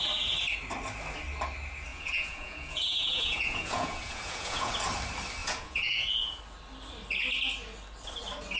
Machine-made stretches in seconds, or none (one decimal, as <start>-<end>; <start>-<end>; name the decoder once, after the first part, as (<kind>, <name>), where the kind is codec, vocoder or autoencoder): 1.9-4.7 (vocoder, Vocos); 5.4-6.4